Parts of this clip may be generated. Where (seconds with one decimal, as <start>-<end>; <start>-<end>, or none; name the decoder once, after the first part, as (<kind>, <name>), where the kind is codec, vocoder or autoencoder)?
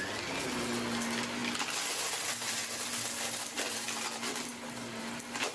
none